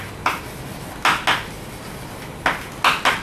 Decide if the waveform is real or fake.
real